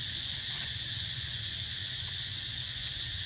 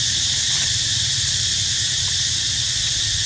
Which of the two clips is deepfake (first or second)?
first